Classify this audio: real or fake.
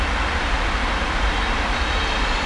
real